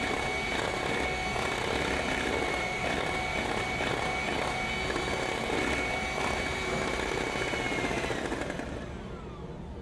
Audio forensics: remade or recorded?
recorded